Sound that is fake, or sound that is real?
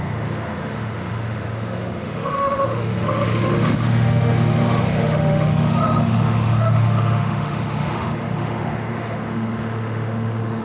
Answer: fake